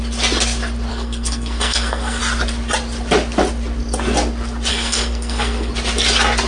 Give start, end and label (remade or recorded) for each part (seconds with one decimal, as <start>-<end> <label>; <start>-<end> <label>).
0.0-0.9 recorded; 0.9-2.2 remade; 2.2-4.7 recorded; 4.7-5.7 remade; 5.7-6.5 recorded